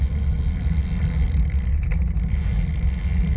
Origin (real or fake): real